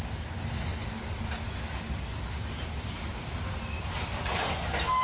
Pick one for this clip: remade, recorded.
recorded